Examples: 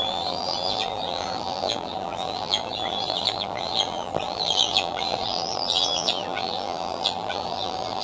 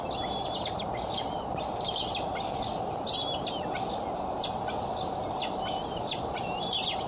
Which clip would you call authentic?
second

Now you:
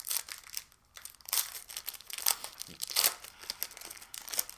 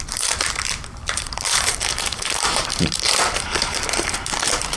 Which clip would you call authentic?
first